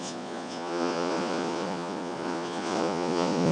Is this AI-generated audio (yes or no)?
yes